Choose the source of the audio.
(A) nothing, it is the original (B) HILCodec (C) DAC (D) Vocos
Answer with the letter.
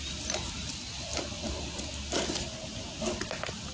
A